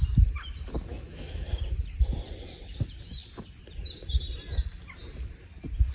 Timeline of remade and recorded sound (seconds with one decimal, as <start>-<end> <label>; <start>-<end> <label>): 0.0-0.9 recorded; 0.9-1.6 remade; 1.6-5.9 recorded